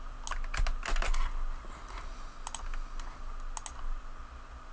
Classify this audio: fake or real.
real